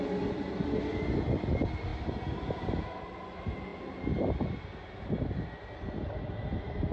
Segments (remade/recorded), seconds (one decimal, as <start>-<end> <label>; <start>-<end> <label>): 0.0-6.9 recorded